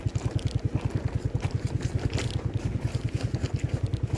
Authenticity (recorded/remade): recorded